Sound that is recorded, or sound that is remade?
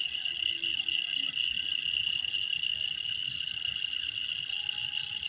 recorded